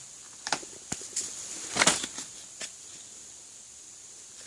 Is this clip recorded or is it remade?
recorded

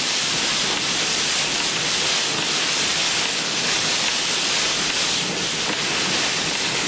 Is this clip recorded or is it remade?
recorded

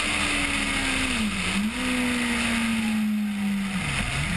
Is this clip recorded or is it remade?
recorded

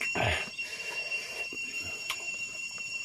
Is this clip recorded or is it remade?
remade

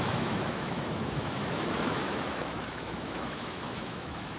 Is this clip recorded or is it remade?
remade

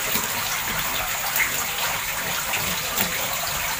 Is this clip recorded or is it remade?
recorded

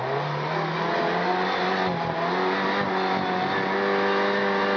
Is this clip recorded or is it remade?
recorded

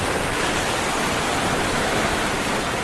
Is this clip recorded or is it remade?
recorded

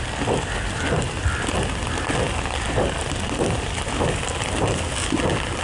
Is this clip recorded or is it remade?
recorded